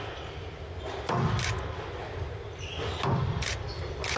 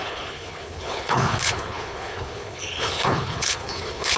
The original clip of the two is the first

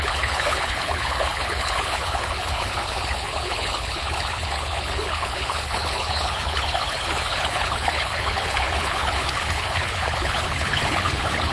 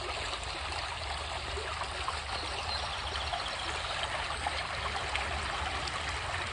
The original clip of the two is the second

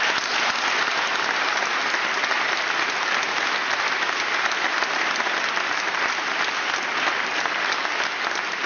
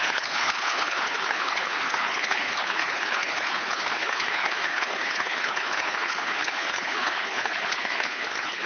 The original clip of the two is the first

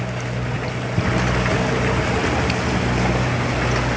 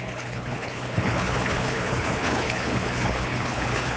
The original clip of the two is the first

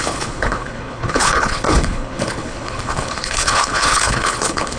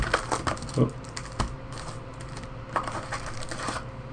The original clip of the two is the second